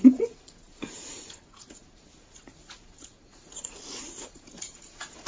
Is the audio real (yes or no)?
no